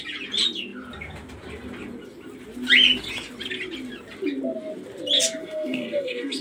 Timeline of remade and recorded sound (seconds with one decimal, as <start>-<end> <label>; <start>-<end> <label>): 0.0-5.4 recorded; 5.4-6.4 remade